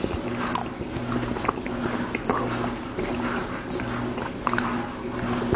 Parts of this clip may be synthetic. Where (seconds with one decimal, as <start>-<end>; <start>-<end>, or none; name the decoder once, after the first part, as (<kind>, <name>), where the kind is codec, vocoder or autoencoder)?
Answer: none